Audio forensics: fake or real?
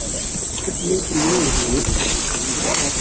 real